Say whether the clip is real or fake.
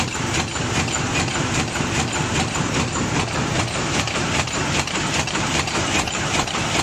fake